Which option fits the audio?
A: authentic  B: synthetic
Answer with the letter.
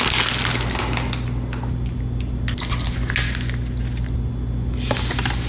A